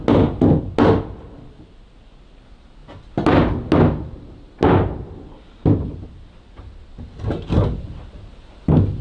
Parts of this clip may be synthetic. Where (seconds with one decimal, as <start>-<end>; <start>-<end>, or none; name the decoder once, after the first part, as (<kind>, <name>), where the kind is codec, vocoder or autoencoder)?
none